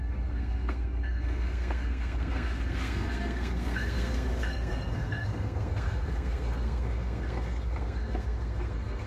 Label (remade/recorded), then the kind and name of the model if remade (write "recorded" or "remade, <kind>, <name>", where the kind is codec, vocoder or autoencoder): remade, codec, SNAC